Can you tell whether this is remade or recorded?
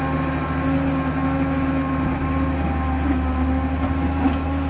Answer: recorded